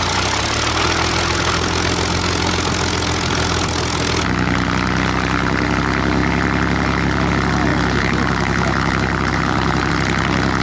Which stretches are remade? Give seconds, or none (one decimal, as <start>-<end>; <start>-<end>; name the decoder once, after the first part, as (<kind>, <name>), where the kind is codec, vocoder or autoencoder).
7.7-9.9 (vocoder, BigVGAN v2)